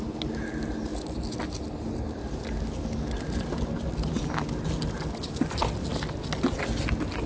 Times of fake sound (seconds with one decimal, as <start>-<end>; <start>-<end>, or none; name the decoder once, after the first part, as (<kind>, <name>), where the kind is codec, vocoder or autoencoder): none